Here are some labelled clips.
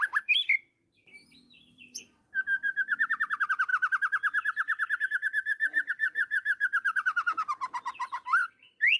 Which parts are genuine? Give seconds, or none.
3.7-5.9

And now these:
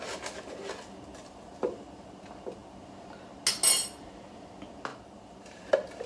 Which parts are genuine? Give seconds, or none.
0.0-1.1; 1.6-4.9; 5.6-6.1

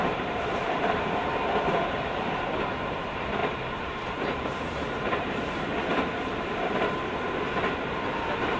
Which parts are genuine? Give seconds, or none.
none

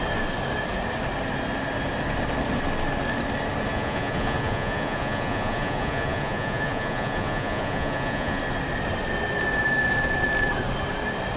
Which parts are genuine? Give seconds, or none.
0.0-3.7; 8.4-11.4

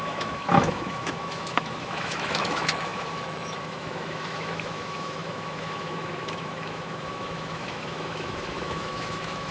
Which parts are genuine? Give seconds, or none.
none

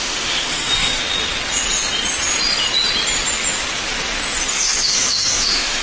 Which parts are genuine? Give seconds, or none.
1.0-4.5